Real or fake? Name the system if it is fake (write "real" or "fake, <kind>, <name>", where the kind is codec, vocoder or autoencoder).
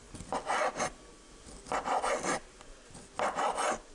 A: real